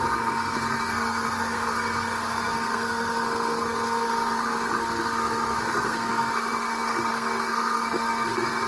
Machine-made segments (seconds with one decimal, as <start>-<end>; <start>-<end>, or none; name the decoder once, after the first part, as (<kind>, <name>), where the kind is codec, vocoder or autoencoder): 0.0-8.7 (codec, SNAC)